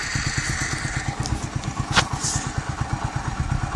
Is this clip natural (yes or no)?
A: yes